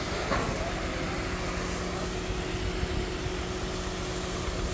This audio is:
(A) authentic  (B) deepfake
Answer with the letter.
A